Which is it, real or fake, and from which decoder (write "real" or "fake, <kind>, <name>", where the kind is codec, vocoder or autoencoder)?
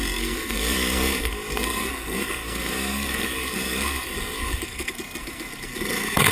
fake, codec, SNAC